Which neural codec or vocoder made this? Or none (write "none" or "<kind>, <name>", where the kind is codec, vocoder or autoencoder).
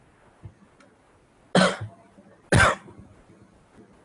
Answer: none